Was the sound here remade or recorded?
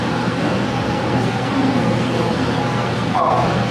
remade